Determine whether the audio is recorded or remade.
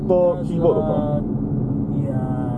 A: recorded